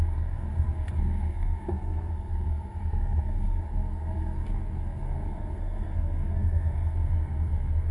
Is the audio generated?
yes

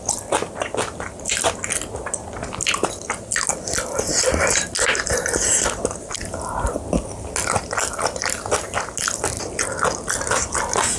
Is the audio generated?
no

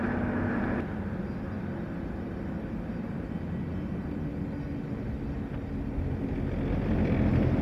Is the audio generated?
no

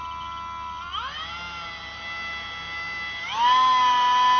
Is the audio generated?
no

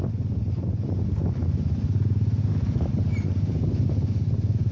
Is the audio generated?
no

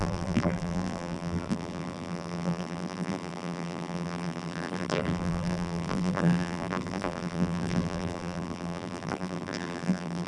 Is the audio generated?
yes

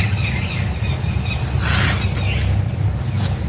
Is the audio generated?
no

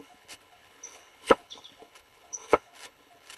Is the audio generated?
yes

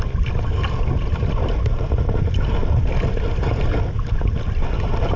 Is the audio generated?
yes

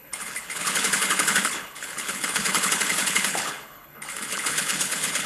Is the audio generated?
yes